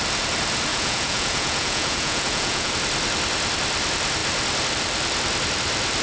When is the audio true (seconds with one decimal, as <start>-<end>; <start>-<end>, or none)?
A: 0.0-0.7; 2.7-6.0